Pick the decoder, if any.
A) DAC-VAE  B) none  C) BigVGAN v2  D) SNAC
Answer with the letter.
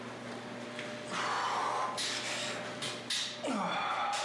B